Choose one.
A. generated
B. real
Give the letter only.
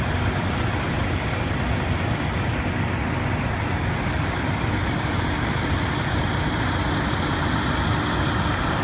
B